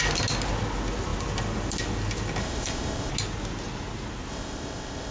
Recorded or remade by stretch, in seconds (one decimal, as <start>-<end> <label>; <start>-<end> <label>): 0.0-2.4 recorded; 2.4-3.1 remade; 3.1-4.3 recorded; 4.3-5.1 remade